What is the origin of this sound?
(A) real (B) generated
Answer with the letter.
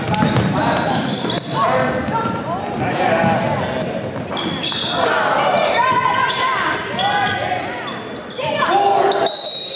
A